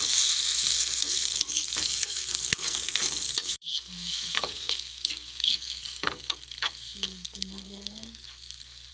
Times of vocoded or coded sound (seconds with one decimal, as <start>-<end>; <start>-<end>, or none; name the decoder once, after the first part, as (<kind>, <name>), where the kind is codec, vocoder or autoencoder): 0.0-8.9 (codec, SNAC)